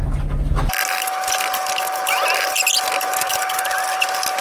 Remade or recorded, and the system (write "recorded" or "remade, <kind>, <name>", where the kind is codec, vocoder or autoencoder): recorded